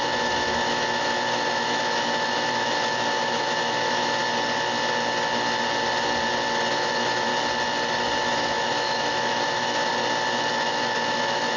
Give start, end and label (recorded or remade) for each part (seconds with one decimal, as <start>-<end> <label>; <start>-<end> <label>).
0.0-4.2 remade; 4.2-6.7 recorded; 6.7-7.3 remade; 7.3-8.2 recorded; 8.2-9.9 remade; 9.9-10.5 recorded; 10.5-11.6 remade